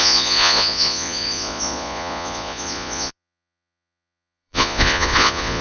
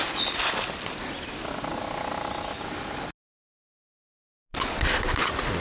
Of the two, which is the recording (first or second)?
second